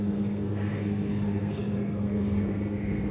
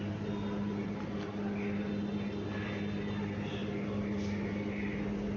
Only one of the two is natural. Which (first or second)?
second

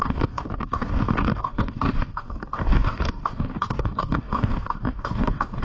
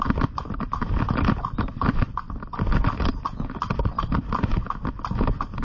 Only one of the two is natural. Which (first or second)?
second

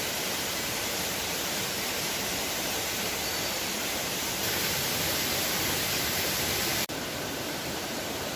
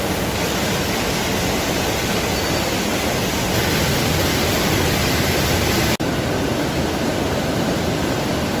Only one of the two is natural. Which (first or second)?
second